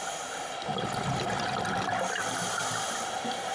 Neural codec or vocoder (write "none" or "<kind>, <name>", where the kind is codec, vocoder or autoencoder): none